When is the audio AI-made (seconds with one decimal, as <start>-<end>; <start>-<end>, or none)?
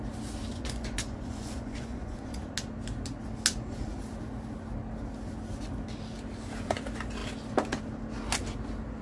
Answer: 0.5-2.4